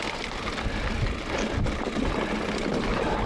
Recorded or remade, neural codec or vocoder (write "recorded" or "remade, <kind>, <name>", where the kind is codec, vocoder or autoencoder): recorded